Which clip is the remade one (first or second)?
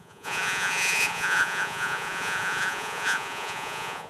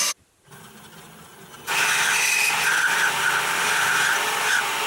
first